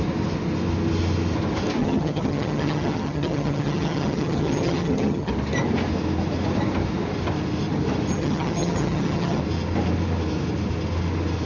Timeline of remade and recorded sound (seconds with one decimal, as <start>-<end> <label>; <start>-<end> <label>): 0.0-1.8 recorded; 1.8-5.3 remade; 5.3-8.1 recorded; 8.1-9.4 remade; 9.4-11.5 recorded